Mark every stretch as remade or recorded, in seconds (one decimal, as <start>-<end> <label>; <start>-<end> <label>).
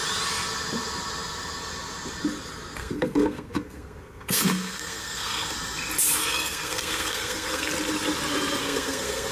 0.0-2.8 recorded; 2.8-5.5 remade; 5.5-6.2 recorded; 6.2-7.7 remade; 7.7-8.6 recorded; 8.6-9.3 remade